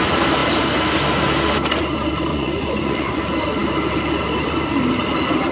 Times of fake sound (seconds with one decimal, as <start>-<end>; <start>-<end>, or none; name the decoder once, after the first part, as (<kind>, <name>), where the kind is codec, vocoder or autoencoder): 2.3-3.2 (vocoder, Vocos)